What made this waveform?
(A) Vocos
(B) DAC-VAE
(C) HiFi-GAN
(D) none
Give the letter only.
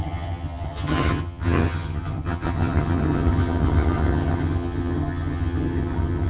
C